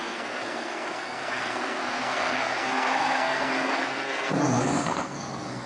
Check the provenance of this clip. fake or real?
fake